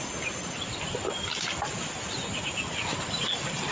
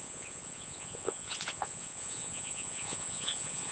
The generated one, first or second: second